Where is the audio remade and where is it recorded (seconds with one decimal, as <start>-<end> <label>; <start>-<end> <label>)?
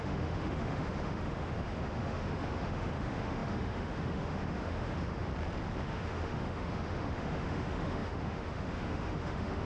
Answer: 0.0-5.3 remade; 5.3-5.8 recorded; 5.8-9.7 remade